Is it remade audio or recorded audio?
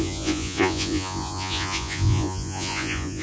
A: remade